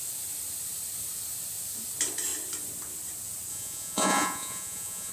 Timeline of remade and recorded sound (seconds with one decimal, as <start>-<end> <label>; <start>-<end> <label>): 0.0-3.5 recorded; 3.5-5.1 remade